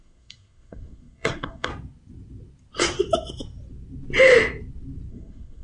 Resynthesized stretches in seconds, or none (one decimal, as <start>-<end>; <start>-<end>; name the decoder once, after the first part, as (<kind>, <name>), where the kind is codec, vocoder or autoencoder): 0.0-1.7 (codec, SNAC); 5.1-5.6